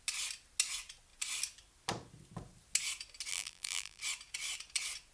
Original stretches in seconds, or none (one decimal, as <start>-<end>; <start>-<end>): 0.0-3.3; 4.0-5.1